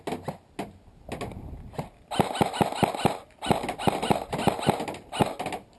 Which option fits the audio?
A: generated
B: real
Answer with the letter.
B